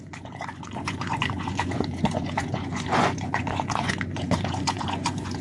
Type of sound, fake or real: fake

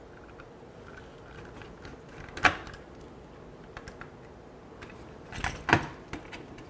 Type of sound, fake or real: real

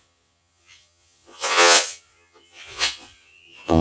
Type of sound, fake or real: fake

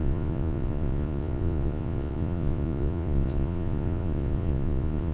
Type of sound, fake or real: fake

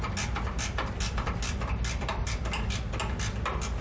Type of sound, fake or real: real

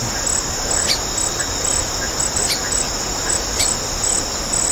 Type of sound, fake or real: real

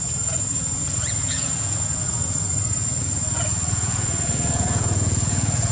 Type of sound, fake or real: fake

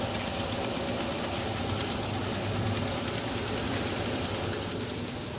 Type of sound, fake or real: real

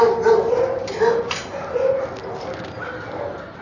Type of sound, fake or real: real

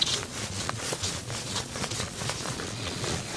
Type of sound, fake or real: fake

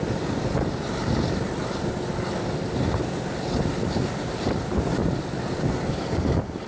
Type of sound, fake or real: real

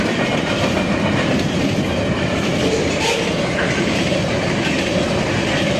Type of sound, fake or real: real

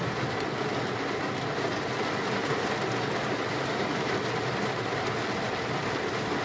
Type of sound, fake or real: real